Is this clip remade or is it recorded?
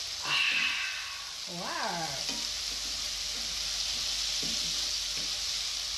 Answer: recorded